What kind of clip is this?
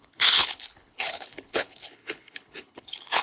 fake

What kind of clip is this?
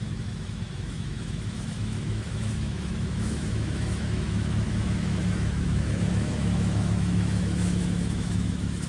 fake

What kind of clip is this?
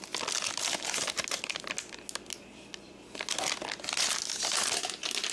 real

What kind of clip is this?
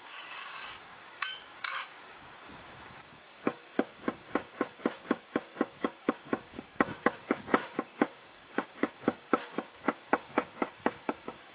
fake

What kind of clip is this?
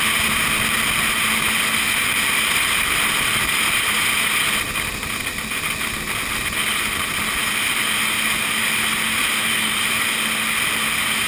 real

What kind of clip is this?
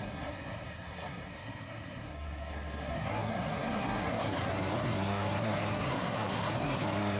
fake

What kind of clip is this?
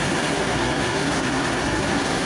fake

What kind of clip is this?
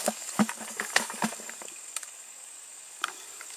fake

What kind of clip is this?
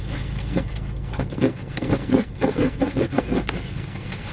fake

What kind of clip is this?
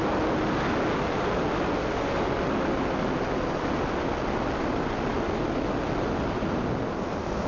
real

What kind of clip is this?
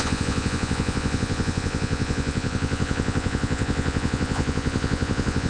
fake